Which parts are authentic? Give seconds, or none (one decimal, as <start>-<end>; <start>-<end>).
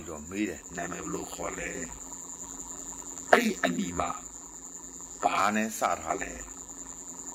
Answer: 0.0-0.6; 5.4-6.1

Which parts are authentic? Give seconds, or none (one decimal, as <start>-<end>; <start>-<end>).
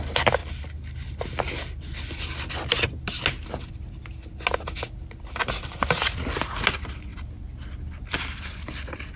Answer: 0.0-9.2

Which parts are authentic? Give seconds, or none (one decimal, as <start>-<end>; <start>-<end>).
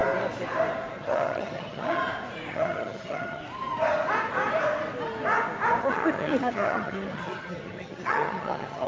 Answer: 0.0-0.9; 2.0-2.5; 3.4-5.8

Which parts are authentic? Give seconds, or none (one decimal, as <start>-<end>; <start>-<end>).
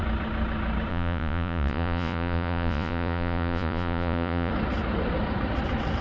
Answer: 0.0-0.9; 4.5-6.0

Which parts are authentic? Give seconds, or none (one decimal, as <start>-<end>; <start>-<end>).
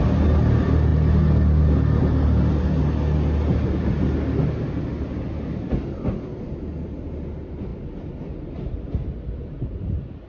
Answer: 0.0-10.3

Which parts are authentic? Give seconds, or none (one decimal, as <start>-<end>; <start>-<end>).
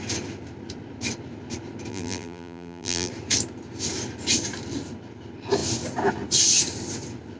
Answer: 0.0-1.9; 3.1-7.4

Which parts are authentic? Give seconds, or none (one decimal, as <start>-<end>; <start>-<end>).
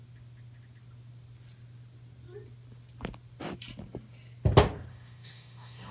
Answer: 0.0-4.9